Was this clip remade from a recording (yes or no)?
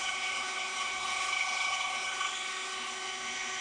yes